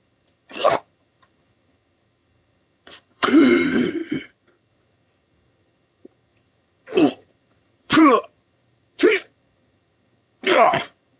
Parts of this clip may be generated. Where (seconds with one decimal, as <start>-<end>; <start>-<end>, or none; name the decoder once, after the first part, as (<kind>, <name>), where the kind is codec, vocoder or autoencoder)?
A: 0.0-11.2 (vocoder, HiFi-GAN)